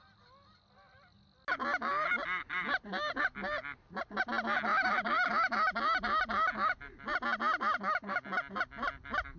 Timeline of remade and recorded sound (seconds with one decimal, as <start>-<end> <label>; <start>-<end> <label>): 0.0-4.7 recorded; 4.7-5.3 remade; 5.3-9.4 recorded